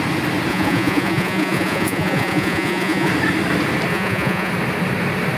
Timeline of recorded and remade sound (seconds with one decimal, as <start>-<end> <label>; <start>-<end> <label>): 0.0-0.5 recorded; 0.5-3.1 remade; 3.1-3.9 recorded; 3.9-4.5 remade; 4.5-5.4 recorded